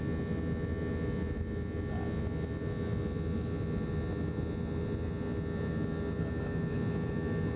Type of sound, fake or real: real